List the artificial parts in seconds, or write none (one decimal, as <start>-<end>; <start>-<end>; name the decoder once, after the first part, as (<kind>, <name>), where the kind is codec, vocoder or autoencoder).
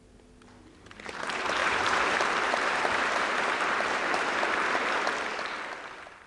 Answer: 1.6-4.4 (vocoder, BigVGAN v2)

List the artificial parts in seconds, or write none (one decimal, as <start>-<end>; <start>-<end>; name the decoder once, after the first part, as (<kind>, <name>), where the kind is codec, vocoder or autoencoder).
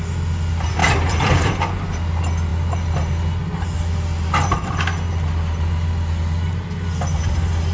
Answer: 0.8-2.0 (vocoder, BigVGAN v2)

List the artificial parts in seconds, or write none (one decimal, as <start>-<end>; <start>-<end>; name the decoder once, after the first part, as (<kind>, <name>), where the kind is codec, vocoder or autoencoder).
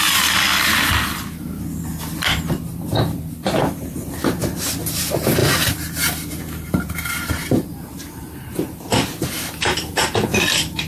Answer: 2.6-3.3 (vocoder, BigVGAN v2); 5.4-9.2; 10.3-10.9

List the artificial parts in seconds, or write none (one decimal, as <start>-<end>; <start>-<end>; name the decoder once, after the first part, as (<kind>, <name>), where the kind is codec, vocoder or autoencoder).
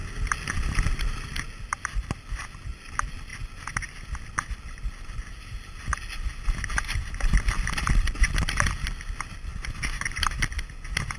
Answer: 3.3-5.0 (vocoder, BigVGAN v2); 9.5-10.7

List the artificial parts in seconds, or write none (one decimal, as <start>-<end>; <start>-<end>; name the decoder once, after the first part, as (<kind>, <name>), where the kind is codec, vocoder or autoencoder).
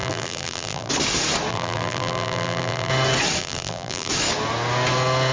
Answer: 0.0-0.9 (vocoder, BigVGAN v2); 1.5-2.9; 3.4-4.1